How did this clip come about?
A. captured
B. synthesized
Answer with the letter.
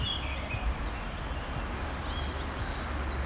A